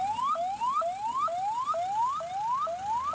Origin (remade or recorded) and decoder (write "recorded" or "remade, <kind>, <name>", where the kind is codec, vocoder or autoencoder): recorded